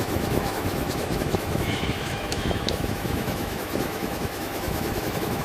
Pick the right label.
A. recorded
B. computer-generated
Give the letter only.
B